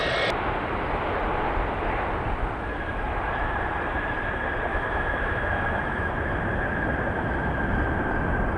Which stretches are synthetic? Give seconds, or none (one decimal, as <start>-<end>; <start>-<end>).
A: 4.7-6.1